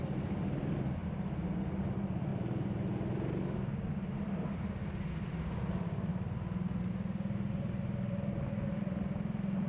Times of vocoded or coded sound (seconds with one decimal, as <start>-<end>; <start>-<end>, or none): none